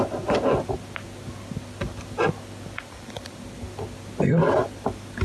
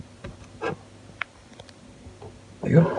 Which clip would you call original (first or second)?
first